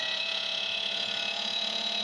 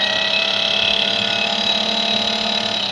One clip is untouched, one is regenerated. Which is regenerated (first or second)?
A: first